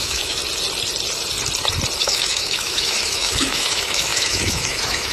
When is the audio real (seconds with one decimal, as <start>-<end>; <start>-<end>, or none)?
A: 0.4-2.0